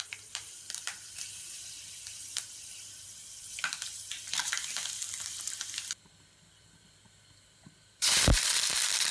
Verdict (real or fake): fake